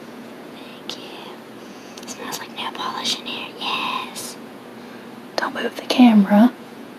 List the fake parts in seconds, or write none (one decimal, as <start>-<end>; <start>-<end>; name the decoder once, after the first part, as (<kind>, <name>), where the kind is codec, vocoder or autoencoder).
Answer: 0.0-0.7 (vocoder, Vocos); 1.6-2.2; 4.2-4.7; 5.5-7.0